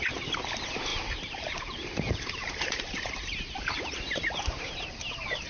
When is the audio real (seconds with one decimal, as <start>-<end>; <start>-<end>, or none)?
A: 0.0-0.9; 4.2-5.5